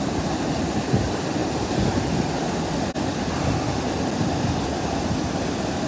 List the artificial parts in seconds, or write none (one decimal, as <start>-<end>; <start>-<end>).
none